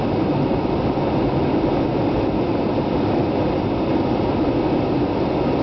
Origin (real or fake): real